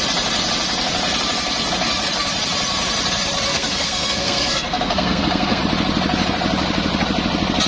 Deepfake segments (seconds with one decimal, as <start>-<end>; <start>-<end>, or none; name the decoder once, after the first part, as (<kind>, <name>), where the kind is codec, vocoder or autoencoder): 3.5-5.6 (codec, SNAC)